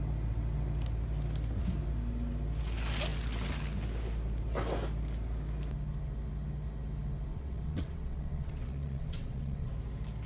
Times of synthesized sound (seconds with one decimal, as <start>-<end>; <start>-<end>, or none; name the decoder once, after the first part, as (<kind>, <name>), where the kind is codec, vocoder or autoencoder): 7.3-9.7 (vocoder, WaveNeXt)